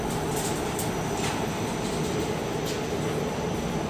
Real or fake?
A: real